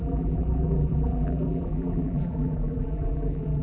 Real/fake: fake